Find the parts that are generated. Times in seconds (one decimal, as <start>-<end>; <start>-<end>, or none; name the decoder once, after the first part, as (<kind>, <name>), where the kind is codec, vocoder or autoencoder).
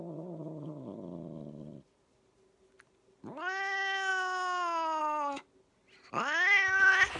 none